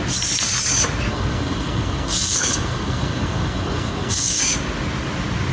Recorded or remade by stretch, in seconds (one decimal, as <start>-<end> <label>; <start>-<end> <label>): 0.0-1.1 recorded; 1.1-4.4 remade; 4.4-5.5 recorded